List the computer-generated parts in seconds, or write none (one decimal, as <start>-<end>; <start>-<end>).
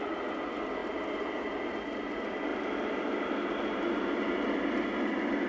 2.5-3.3